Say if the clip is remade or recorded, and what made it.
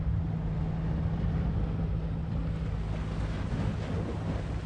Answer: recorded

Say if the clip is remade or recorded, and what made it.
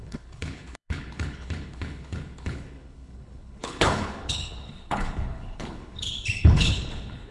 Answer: remade, codec, HILCodec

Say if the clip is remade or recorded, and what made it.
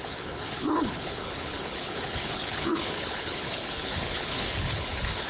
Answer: remade, codec, HILCodec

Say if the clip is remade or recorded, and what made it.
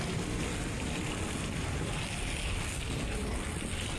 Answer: recorded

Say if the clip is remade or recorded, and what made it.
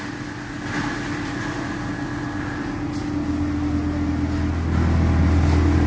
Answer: recorded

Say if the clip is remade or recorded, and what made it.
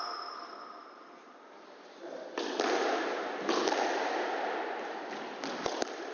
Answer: recorded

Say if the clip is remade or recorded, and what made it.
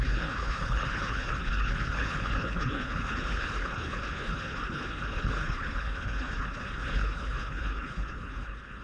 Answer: remade, codec, HILCodec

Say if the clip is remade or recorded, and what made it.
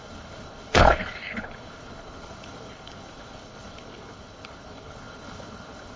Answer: remade, codec, HILCodec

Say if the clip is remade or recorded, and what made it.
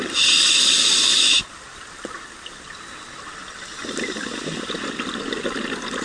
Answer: recorded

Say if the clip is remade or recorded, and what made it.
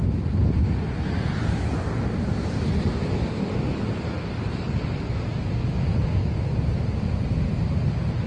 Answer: recorded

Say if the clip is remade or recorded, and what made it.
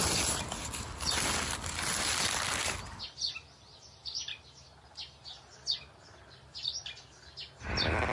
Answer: recorded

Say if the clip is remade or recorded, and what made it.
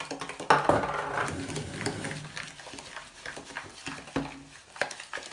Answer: recorded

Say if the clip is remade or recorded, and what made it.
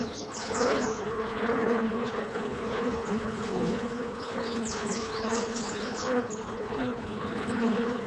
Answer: remade, codec, HILCodec